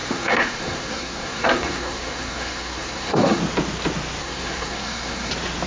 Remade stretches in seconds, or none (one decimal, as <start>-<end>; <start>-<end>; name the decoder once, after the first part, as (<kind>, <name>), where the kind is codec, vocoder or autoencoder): 0.0-3.4 (codec, SNAC); 4.2-5.3